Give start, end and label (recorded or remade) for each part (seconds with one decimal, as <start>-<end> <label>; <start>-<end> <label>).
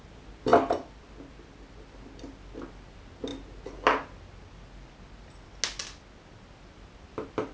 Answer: 0.0-7.5 recorded